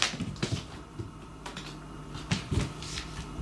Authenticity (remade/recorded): remade